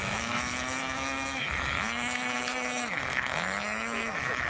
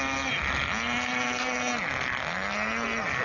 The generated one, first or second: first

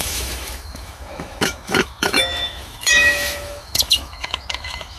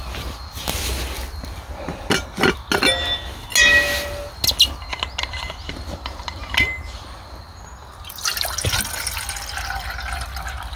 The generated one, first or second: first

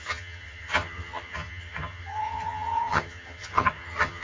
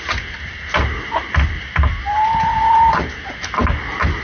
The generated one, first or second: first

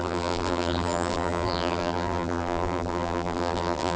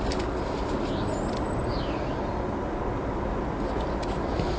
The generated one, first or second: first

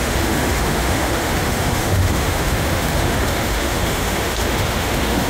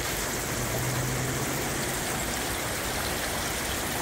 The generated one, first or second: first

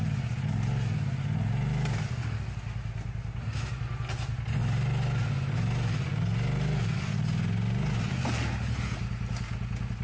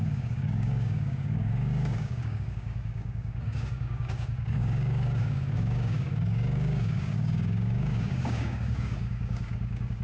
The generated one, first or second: second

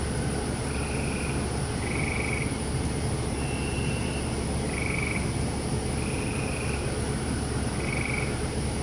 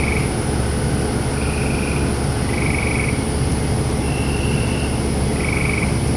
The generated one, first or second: first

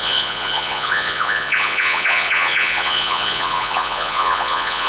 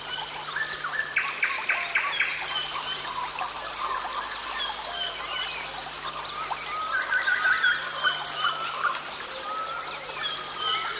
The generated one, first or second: first